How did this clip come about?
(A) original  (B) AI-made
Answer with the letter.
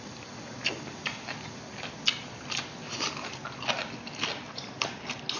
A